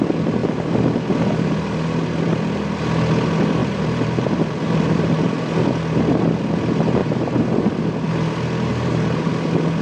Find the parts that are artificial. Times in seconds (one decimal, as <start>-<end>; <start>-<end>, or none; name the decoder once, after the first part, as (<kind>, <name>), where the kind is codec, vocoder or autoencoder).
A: 0.4-0.9 (vocoder, BigVGAN v2); 3.6-5.4; 7.0-8.1; 8.7-9.3